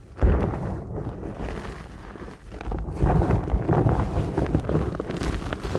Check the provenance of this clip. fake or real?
real